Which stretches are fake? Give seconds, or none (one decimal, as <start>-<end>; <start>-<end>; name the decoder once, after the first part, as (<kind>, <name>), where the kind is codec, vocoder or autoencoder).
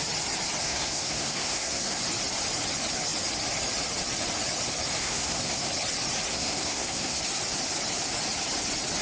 0.6-2.0 (codec, SNAC); 5.0-5.7; 6.3-7.2